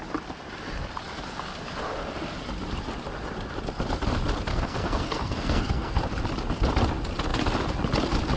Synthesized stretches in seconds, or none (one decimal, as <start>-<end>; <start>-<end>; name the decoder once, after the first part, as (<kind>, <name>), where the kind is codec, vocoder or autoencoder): 4.5-6.0 (codec, SNAC)